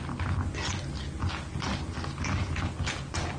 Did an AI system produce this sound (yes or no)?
no